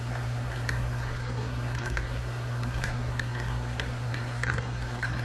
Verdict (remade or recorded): remade